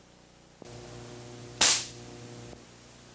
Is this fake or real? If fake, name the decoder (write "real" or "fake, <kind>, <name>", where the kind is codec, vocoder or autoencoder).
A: real